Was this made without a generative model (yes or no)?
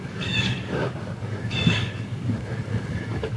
no